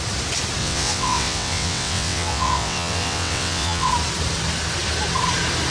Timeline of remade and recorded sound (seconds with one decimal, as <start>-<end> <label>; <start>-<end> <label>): 0.0-0.6 recorded; 0.6-3.9 remade; 3.9-5.7 recorded